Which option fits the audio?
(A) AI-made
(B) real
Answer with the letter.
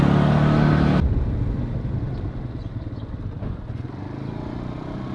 B